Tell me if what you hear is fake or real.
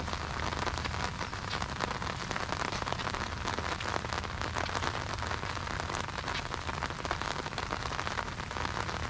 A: real